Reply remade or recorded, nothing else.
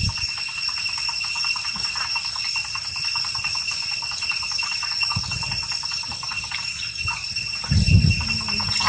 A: recorded